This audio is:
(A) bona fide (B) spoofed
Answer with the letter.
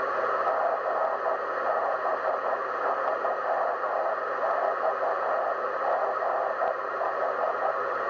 A